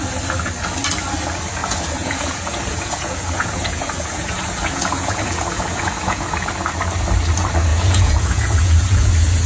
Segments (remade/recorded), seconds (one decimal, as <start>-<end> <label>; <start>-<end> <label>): 0.0-1.6 recorded; 1.6-6.5 remade; 6.5-7.7 recorded; 7.7-9.1 remade; 9.1-9.5 recorded